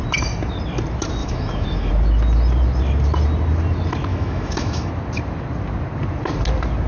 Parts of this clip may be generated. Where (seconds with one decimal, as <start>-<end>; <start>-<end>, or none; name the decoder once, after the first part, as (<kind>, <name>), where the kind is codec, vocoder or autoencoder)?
1.2-1.9 (autoencoder, DAC-VAE); 4.1-4.9